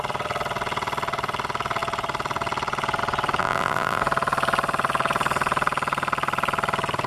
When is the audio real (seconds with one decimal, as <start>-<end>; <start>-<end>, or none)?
0.0-3.4; 4.0-7.1